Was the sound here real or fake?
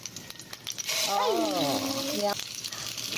real